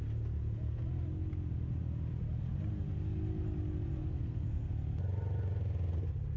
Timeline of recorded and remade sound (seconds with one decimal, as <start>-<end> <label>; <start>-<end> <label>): 0.0-4.0 recorded; 4.0-4.7 remade; 4.7-6.4 recorded